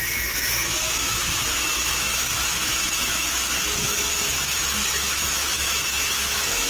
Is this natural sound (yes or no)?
no